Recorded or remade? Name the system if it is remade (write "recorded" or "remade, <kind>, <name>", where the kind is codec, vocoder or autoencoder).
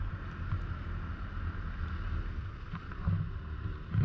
recorded